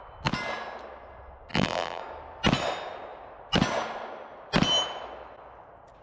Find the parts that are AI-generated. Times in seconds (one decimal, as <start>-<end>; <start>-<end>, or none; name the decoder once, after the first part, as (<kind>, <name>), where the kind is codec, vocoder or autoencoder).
1.5-2.0 (vocoder, BigVGAN v2)